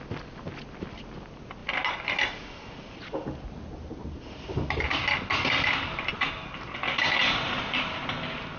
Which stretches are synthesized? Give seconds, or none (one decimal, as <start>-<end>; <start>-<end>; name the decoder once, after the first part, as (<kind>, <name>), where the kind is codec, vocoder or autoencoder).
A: 7.2-8.0 (vocoder, BigVGAN v2)